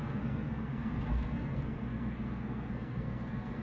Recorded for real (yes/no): no